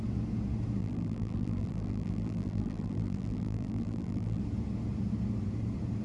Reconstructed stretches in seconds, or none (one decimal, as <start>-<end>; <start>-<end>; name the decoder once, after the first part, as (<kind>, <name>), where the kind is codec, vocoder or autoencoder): 0.8-4.4 (vocoder, BigVGAN v2)